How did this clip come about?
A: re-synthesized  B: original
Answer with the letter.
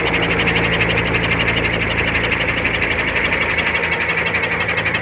B